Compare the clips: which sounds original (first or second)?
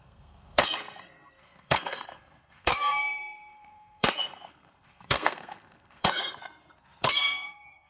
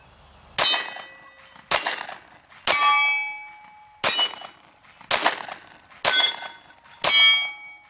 second